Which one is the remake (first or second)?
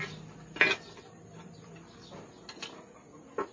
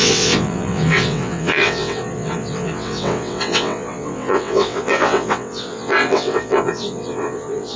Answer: second